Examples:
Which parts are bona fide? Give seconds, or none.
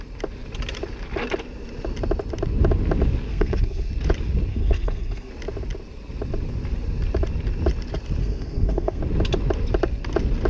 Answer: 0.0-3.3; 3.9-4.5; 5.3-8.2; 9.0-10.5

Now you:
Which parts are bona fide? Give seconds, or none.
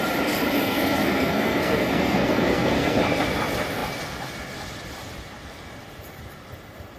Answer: 0.0-0.6; 3.0-7.0